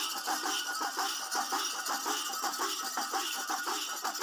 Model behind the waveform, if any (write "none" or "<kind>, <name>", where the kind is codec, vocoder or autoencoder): none